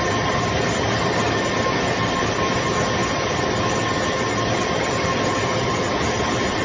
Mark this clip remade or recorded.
recorded